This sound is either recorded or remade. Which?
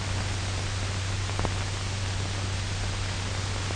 recorded